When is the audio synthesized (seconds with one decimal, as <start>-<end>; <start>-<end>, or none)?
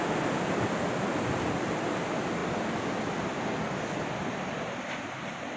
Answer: none